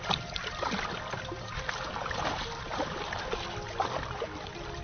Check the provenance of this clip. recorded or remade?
recorded